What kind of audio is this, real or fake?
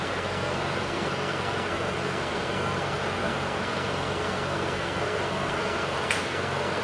fake